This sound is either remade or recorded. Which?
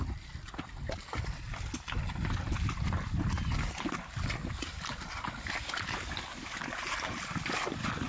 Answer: recorded